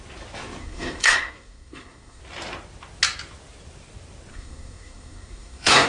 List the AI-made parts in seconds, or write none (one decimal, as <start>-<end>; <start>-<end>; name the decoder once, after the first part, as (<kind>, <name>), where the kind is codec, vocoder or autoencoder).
0.6-2.2 (codec, SNAC); 4.3-5.9